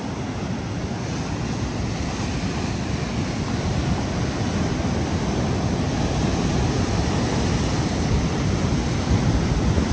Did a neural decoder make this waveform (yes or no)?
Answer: no